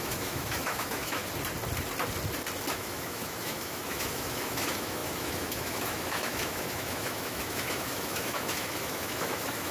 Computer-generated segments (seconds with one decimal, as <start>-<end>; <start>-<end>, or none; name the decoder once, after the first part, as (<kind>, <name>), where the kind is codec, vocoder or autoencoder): 0.0-1.2 (autoencoder, DAC-VAE); 2.7-9.7